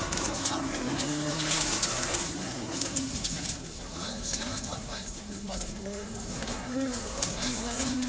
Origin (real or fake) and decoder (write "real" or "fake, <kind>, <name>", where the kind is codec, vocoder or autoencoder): fake, codec, SNAC